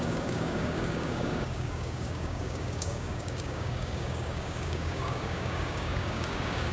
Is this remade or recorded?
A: remade